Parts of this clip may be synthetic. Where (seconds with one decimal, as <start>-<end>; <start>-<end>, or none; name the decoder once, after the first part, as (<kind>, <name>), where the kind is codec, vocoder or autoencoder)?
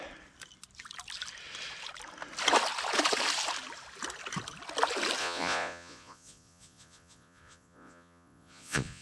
5.2-9.0 (vocoder, Vocos)